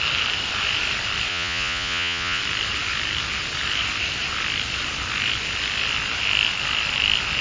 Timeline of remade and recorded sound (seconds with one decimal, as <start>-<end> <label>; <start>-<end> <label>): 0.0-1.3 recorded; 1.3-2.4 remade; 2.4-7.4 recorded